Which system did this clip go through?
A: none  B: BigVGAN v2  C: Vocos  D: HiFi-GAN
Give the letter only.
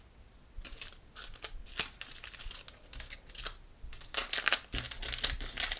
A